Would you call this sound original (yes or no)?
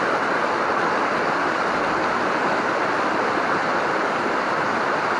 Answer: yes